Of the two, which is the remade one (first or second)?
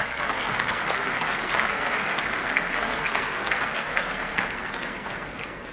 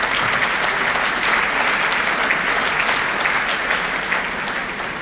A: first